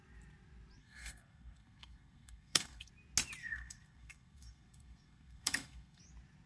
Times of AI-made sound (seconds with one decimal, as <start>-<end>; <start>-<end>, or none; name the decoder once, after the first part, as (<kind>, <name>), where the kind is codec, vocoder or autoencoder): 0.8-2.9 (codec, SNAC); 3.4-6.0